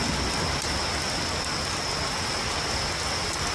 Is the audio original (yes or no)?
yes